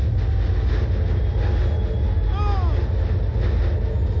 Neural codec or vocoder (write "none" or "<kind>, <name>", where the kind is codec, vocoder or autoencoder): none